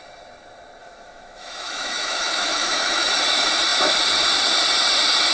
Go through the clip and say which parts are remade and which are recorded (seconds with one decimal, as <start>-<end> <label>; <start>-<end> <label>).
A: 0.0-0.8 recorded; 0.8-3.1 remade; 3.1-5.3 recorded